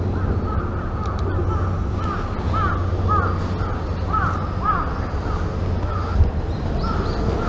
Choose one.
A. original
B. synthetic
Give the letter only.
A